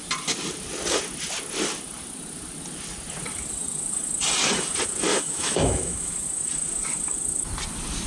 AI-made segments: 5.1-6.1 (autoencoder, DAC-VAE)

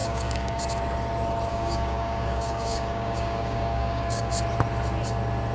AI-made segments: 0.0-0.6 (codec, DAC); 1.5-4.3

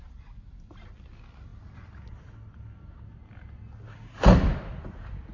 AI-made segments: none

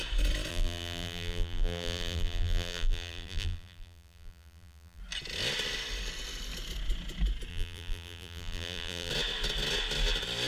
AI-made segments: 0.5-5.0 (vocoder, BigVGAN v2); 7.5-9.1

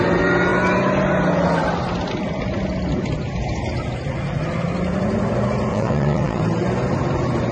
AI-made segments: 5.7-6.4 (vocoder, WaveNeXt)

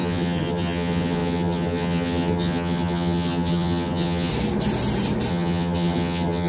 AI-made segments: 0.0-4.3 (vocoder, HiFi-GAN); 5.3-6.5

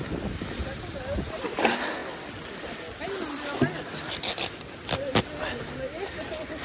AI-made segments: none

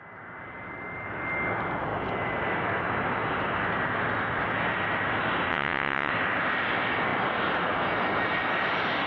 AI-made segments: 5.5-6.1 (vocoder, WaveNeXt)